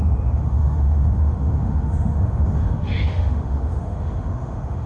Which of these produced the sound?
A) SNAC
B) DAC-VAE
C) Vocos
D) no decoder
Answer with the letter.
B